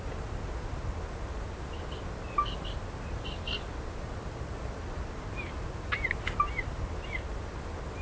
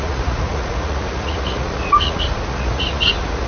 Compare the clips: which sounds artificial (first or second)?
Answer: second